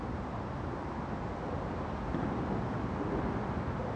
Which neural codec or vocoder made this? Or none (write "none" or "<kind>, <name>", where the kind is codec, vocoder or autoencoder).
none